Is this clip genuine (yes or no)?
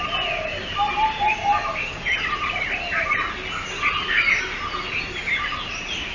yes